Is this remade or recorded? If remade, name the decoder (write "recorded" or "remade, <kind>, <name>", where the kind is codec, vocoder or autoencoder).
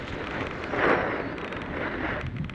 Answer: recorded